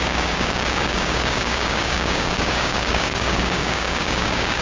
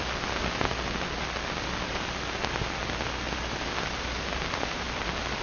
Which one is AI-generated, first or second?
first